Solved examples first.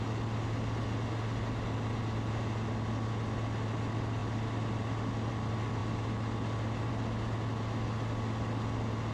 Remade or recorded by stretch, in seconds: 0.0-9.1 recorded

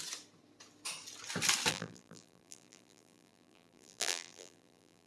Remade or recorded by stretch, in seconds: 0.0-1.7 recorded; 1.7-5.1 remade